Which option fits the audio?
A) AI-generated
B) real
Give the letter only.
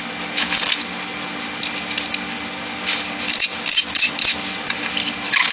B